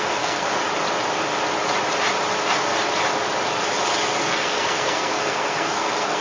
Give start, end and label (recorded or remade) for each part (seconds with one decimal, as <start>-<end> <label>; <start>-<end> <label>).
0.0-0.5 remade; 0.5-4.2 recorded; 4.2-6.2 remade